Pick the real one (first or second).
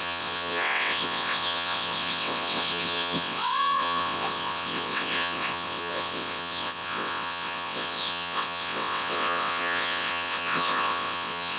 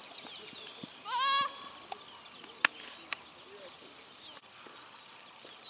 second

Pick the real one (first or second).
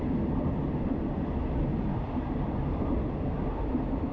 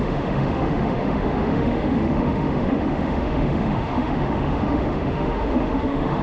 first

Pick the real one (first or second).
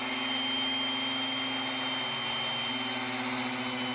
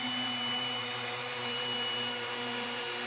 first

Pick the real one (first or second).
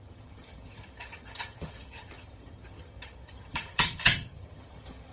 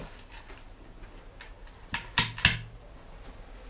second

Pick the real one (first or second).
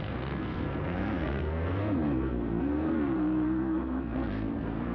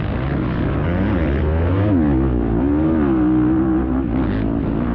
second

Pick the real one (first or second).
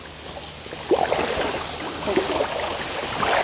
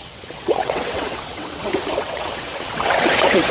first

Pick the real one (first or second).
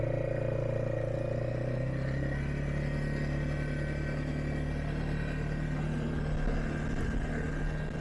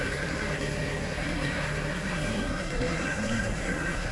first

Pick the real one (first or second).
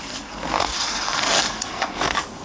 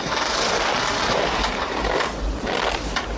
second